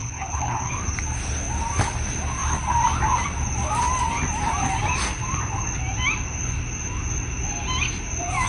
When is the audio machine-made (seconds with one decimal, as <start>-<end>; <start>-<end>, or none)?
0.0-0.7